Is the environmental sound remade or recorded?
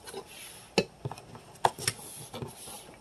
recorded